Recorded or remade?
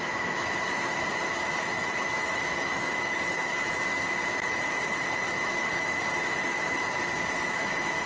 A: remade